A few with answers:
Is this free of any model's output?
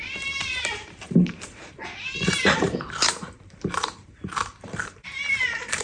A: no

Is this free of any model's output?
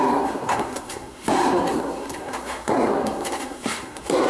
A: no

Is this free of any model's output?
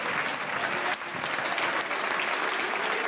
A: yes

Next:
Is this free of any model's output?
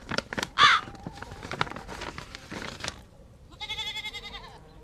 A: yes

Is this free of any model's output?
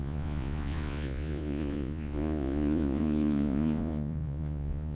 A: no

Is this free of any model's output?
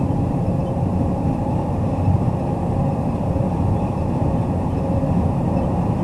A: no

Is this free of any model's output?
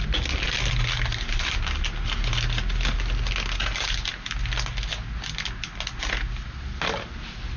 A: yes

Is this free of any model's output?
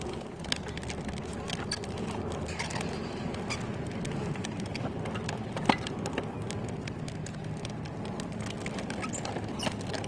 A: yes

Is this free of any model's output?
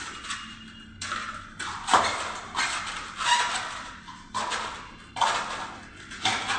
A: yes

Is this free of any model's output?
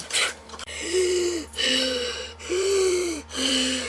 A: no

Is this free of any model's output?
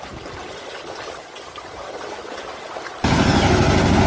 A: yes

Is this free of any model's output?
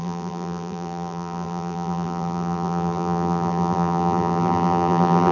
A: no